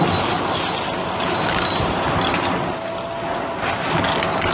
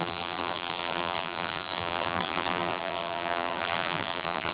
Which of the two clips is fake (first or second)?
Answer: second